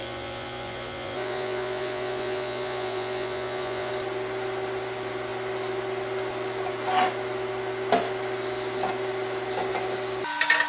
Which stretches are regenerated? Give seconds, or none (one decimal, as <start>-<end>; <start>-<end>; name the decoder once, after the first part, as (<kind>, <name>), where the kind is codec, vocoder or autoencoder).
0.0-3.9 (vocoder, Vocos)